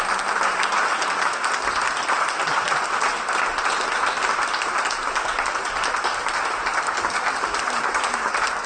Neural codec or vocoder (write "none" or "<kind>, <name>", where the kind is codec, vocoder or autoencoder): none